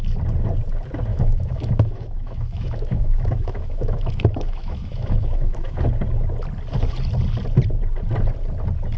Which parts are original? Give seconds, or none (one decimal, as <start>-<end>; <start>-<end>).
0.0-1.1; 5.8-9.0